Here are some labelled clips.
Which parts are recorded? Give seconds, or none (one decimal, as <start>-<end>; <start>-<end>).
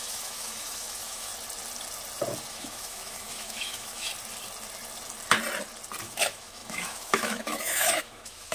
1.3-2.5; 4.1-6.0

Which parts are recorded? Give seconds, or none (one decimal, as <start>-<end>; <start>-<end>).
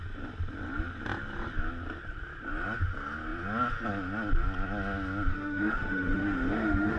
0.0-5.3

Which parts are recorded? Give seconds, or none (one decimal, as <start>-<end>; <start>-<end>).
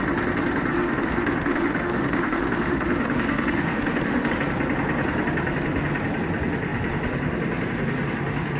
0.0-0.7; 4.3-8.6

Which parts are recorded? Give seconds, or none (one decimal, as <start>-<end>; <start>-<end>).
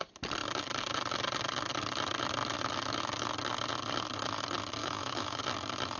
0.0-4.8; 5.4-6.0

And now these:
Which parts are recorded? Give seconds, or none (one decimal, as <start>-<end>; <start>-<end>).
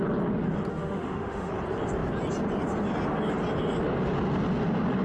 0.0-0.7; 1.5-5.0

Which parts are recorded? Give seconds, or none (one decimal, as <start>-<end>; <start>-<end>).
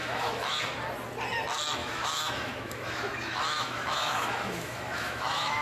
0.6-1.8